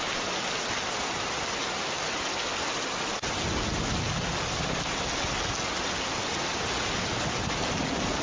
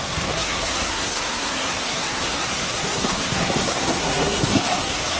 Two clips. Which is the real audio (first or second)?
first